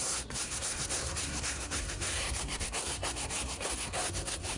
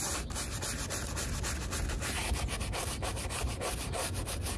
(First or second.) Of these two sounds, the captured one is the second